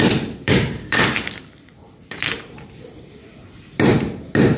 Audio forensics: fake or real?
fake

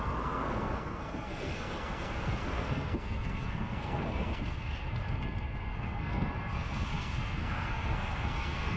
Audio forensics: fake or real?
fake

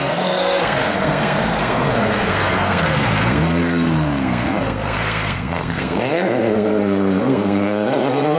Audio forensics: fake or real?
fake